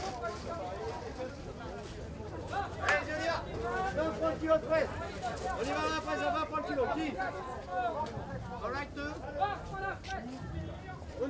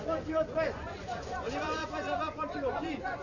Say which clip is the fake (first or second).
second